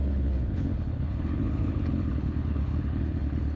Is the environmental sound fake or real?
fake